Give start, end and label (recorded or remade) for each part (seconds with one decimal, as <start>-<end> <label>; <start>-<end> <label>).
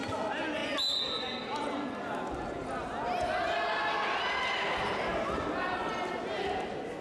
0.0-7.0 recorded